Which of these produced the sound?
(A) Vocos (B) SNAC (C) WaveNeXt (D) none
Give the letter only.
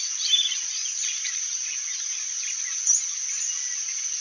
D